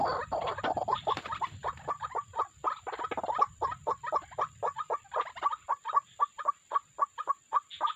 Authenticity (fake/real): real